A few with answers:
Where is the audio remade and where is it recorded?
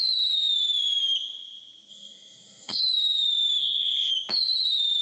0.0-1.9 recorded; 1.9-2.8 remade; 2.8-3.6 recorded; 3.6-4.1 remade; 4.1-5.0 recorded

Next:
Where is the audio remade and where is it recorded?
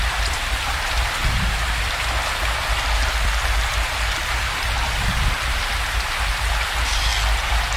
0.0-1.2 remade; 1.2-4.1 recorded; 4.1-7.1 remade; 7.1-7.8 recorded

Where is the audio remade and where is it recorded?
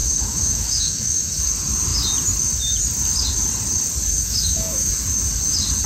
0.0-1.4 remade; 1.4-4.2 recorded; 4.2-4.9 remade; 4.9-5.9 recorded